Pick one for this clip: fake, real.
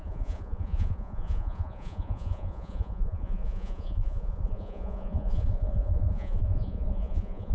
fake